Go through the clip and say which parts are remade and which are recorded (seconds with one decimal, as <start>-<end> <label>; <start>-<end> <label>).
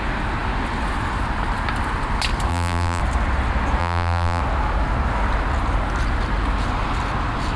0.0-2.5 recorded; 2.5-3.0 remade; 3.0-3.8 recorded; 3.8-4.4 remade; 4.4-7.6 recorded